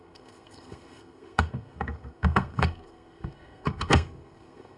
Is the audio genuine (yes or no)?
no